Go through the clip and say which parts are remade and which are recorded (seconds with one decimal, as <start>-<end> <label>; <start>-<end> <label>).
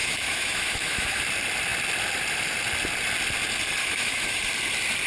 0.0-1.2 remade; 1.2-3.8 recorded; 3.8-4.4 remade; 4.4-5.1 recorded